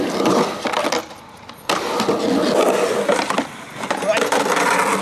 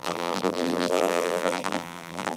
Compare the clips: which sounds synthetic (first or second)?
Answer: second